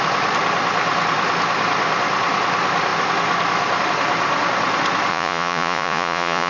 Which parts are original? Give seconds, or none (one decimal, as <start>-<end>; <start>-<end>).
0.0-5.1